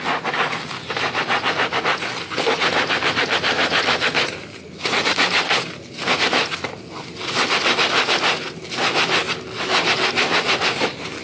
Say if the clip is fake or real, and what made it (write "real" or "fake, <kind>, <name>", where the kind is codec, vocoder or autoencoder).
real